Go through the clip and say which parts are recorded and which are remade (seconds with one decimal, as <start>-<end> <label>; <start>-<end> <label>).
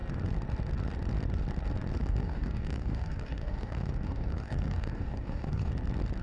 0.0-2.0 recorded; 2.0-5.7 remade; 5.7-6.2 recorded